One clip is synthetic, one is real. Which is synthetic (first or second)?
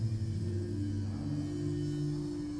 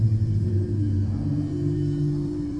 second